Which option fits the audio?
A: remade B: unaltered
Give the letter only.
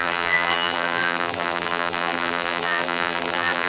A